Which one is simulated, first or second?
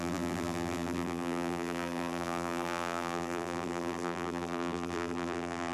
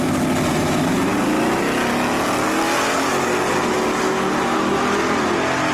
first